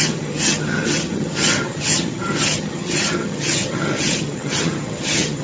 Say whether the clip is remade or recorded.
remade